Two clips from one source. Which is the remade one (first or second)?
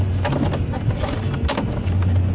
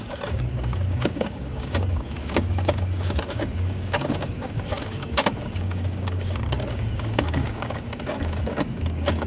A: second